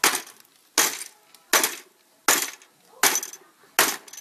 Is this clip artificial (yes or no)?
no